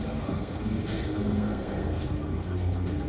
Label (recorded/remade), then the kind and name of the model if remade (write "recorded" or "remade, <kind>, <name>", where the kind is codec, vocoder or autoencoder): remade, codec, SNAC